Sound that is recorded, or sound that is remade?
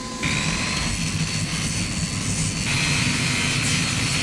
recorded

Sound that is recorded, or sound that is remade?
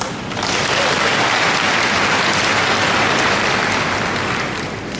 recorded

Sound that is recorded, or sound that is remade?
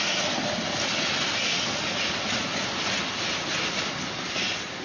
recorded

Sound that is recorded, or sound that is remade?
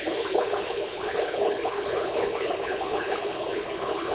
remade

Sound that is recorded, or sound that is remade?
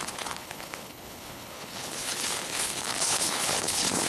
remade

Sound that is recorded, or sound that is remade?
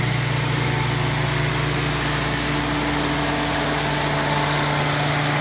recorded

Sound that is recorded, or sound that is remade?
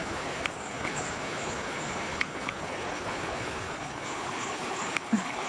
remade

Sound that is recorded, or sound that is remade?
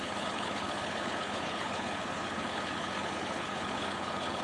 remade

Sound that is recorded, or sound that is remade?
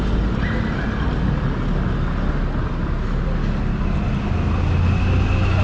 recorded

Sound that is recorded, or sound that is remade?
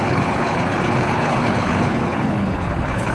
remade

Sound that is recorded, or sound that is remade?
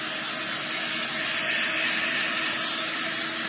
recorded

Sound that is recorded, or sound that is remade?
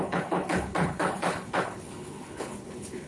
remade